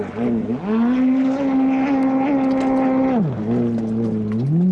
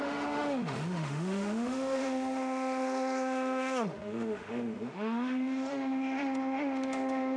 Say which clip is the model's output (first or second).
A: second